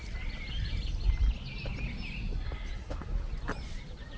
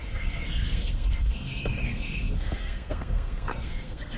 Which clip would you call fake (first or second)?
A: second